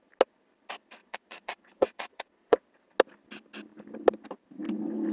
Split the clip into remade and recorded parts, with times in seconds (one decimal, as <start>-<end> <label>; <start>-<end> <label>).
0.0-1.0 recorded; 1.0-2.7 remade; 2.7-5.1 recorded